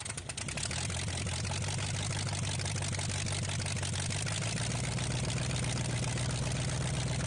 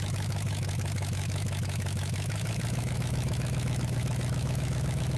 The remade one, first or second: second